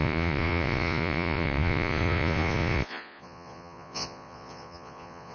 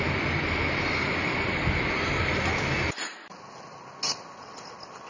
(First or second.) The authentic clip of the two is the second